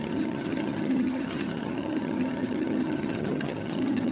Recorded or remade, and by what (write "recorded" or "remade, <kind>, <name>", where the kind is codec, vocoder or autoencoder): remade, vocoder, HiFi-GAN